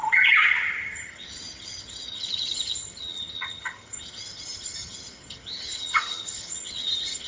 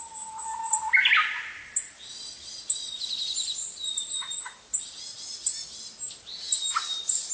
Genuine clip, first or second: second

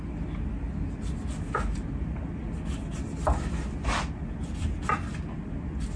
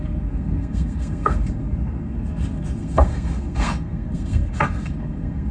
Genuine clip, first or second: first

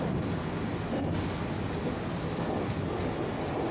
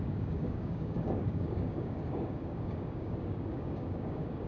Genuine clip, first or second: first